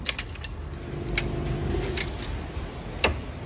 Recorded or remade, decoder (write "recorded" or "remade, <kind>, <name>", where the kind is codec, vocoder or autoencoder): recorded